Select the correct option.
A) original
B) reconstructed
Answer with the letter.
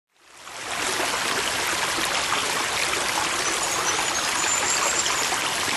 A